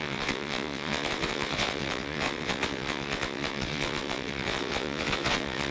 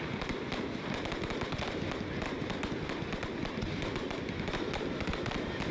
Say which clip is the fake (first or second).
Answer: first